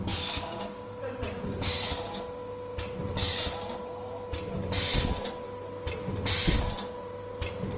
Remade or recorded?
recorded